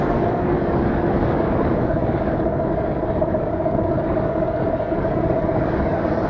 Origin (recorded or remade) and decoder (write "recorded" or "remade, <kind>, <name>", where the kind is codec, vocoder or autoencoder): remade, codec, DAC